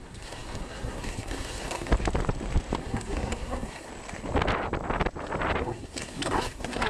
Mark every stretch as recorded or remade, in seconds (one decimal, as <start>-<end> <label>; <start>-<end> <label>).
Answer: 0.0-1.9 remade; 1.9-2.8 recorded; 2.8-3.9 remade; 3.9-5.6 recorded; 5.6-6.9 remade